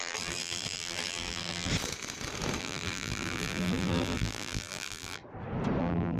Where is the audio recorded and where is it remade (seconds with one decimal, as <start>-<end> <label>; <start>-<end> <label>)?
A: 0.0-1.7 remade; 1.7-2.6 recorded; 2.6-5.2 remade; 5.2-5.8 recorded; 5.8-6.2 remade